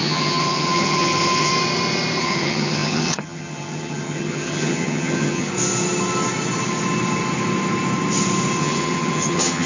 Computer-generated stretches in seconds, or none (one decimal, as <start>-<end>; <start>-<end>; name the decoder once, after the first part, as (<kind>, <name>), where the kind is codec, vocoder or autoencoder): 0.0-1.5 (vocoder, HiFi-GAN); 2.2-5.5; 8.6-9.7